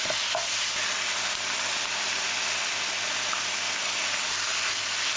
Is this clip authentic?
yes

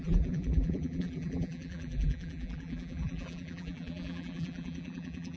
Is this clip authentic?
no